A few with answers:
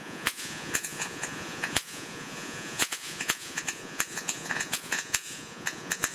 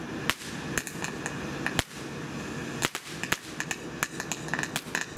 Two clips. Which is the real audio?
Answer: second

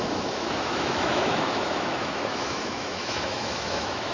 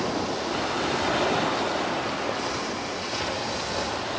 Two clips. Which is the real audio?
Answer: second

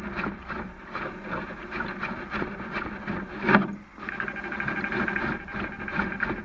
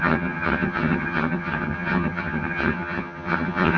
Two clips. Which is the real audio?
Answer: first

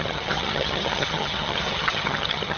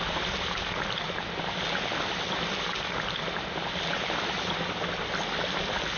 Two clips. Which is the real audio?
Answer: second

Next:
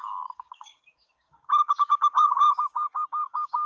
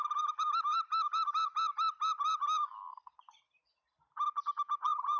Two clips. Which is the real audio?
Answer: second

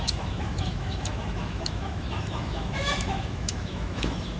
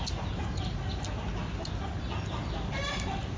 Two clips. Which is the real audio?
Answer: second